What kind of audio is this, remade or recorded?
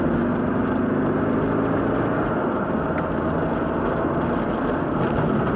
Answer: recorded